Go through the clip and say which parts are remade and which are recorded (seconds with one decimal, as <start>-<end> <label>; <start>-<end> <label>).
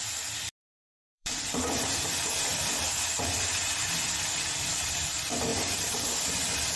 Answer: 0.0-0.6 recorded; 0.6-1.6 remade; 1.6-6.8 recorded